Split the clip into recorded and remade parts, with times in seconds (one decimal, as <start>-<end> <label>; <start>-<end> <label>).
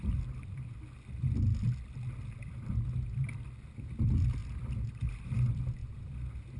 0.0-6.6 recorded